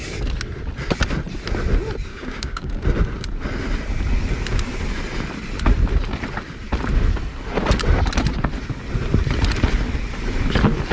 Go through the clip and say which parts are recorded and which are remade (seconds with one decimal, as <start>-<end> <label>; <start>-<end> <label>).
0.0-2.1 recorded; 2.1-2.7 remade; 2.7-10.9 recorded